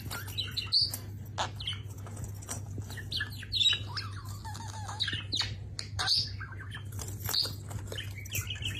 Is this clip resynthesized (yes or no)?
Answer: no